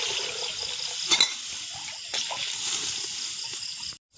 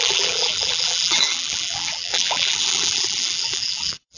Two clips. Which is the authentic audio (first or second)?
first